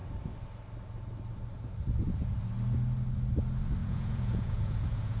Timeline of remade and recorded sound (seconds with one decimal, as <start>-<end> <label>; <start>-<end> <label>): 0.0-3.8 recorded; 3.8-5.2 remade